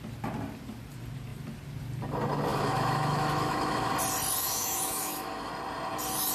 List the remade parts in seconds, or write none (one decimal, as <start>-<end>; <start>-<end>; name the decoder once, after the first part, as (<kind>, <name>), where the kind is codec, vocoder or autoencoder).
2.5-3.9 (autoencoder, DAC-VAE); 4.4-5.5